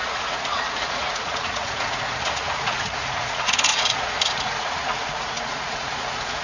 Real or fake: fake